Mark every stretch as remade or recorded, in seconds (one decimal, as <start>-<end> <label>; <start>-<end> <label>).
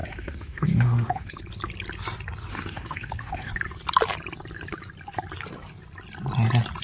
0.0-1.4 remade; 1.4-2.5 recorded; 2.5-3.5 remade; 3.5-6.8 recorded